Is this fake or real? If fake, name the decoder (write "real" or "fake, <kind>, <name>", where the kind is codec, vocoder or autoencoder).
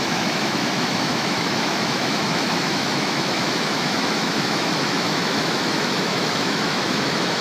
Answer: fake, autoencoder, DAC-VAE